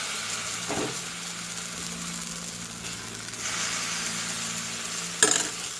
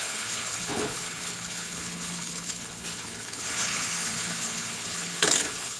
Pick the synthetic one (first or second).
second